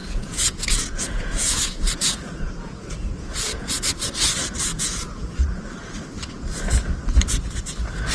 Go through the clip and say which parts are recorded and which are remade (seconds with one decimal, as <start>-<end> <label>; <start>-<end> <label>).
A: 0.0-3.9 remade; 3.9-4.7 recorded; 4.7-5.2 remade; 5.2-8.1 recorded